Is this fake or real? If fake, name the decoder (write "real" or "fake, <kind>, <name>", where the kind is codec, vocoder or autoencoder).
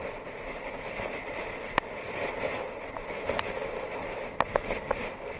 real